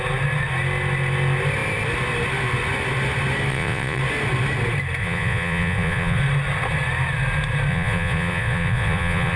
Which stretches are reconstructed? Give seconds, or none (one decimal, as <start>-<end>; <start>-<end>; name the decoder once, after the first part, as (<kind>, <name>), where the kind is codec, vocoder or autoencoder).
3.5-4.0 (vocoder, Vocos); 5.0-6.2; 7.7-9.4